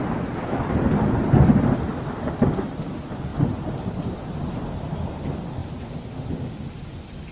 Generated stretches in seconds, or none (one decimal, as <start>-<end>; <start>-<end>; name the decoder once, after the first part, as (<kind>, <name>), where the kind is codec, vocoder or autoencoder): none